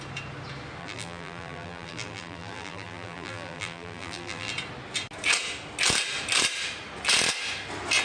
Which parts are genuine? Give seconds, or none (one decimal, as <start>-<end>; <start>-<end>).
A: 0.0-0.8; 4.5-8.0